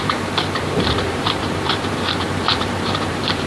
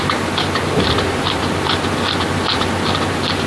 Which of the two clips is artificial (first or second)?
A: first